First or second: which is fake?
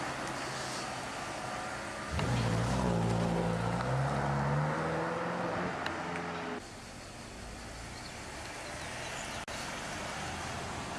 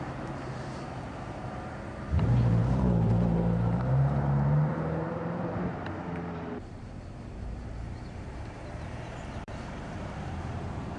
second